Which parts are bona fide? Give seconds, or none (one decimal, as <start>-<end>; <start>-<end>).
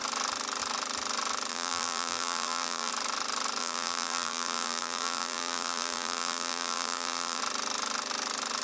0.0-1.5; 2.9-3.6; 7.4-8.6